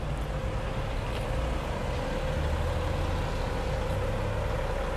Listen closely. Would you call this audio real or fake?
real